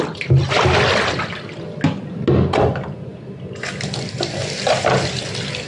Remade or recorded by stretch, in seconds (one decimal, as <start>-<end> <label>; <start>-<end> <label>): 0.0-5.7 recorded